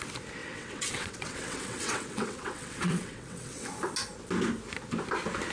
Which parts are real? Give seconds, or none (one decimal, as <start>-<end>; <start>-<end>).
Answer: 0.0-0.4; 3.7-5.5